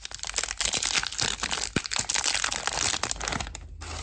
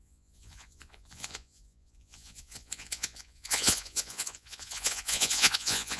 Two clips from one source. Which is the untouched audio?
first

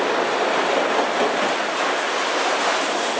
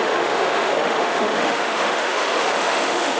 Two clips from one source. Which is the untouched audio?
first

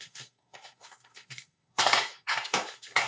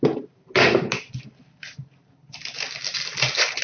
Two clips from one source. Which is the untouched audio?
second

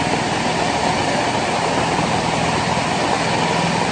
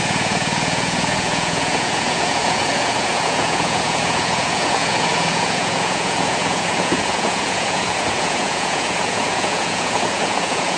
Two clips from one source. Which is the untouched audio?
first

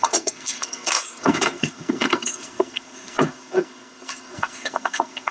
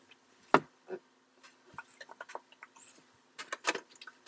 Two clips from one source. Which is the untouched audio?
second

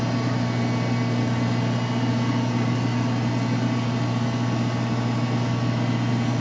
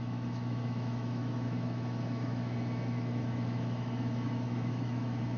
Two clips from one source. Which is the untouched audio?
first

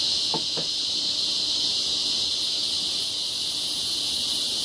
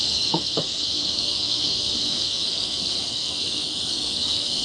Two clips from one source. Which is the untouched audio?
first